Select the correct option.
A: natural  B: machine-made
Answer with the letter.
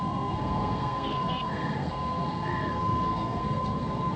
B